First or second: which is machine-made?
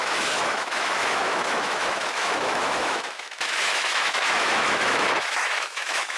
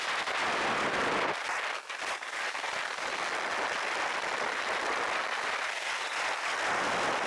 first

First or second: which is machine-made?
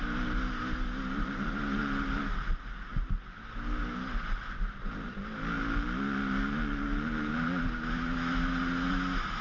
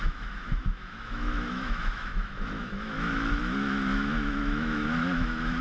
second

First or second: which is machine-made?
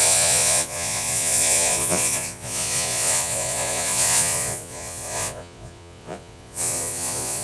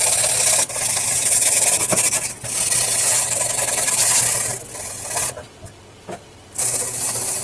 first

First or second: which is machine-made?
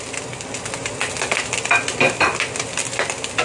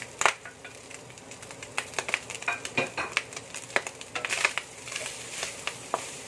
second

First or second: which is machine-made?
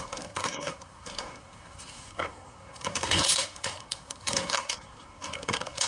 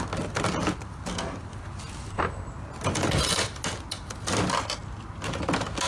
first